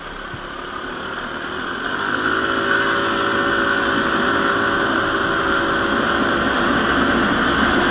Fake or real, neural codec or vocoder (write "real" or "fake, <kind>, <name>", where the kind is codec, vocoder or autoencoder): real